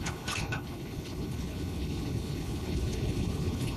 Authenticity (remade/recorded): remade